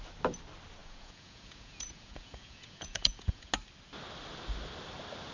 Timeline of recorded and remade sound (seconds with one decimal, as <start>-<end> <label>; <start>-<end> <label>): 0.0-0.8 recorded; 0.8-3.5 remade; 3.5-5.3 recorded